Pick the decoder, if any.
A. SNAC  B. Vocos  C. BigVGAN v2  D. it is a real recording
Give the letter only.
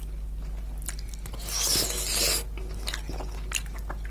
D